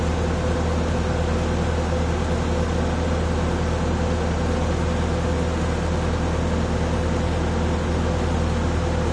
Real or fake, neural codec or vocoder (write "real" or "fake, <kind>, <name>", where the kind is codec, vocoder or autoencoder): real